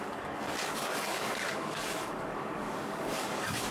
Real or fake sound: fake